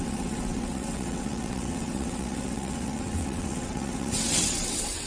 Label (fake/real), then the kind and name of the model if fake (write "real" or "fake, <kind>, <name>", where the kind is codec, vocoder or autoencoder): fake, vocoder, WaveNeXt